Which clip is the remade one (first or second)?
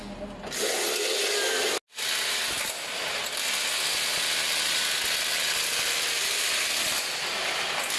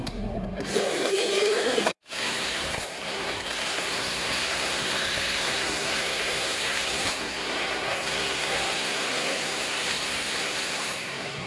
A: second